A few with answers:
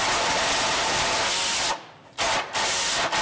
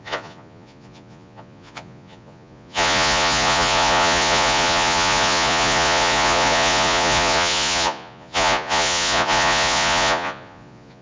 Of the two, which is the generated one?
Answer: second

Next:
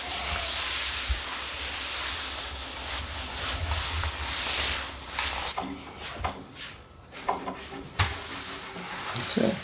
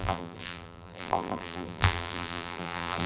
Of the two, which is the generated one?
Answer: second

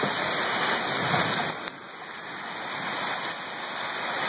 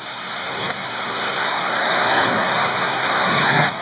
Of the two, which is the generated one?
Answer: second